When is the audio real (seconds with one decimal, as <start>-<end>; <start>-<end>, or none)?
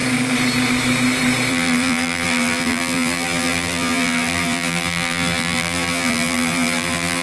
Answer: 0.0-1.5